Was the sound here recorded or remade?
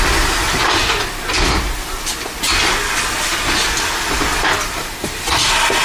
recorded